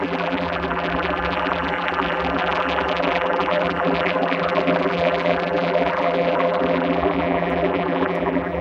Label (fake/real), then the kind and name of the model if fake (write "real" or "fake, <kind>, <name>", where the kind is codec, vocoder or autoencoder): fake, vocoder, BigVGAN v2